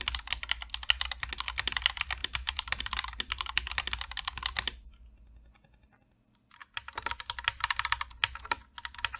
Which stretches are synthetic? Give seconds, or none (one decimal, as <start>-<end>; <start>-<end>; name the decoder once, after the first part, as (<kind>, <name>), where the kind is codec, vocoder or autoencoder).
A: 2.2-2.8 (vocoder, BigVGAN v2); 6.6-7.1